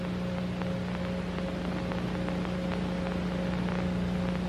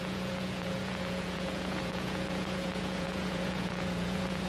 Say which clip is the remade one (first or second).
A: second